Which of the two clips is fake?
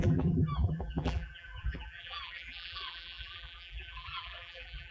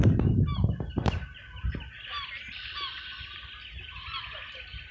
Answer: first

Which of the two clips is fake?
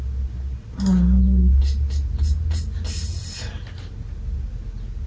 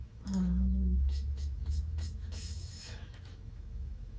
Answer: second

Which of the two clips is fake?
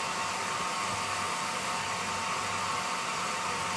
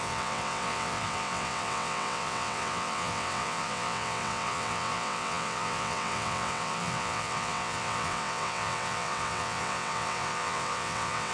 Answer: second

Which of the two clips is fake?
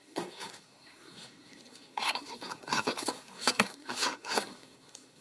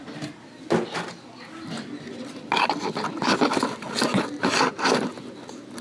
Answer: first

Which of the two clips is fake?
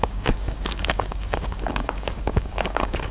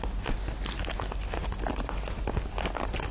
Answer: first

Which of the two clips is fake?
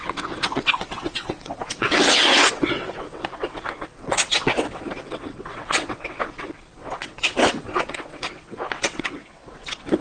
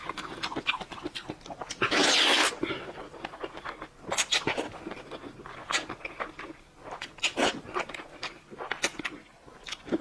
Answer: first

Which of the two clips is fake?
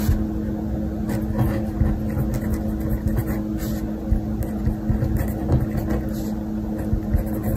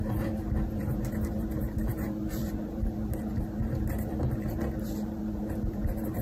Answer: second